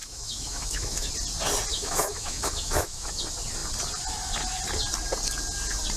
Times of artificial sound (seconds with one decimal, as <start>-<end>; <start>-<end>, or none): 0.0-1.1; 1.7-3.2